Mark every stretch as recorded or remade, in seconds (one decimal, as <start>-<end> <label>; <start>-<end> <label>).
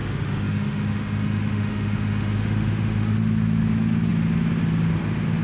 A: 0.0-3.2 remade; 3.2-5.4 recorded